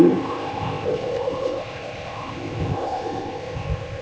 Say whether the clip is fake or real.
fake